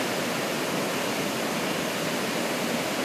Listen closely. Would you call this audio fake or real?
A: real